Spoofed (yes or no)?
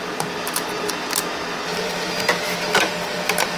no